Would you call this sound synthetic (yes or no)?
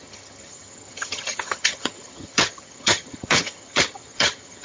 yes